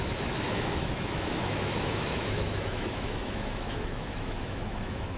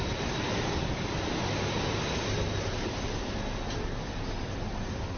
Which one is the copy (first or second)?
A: first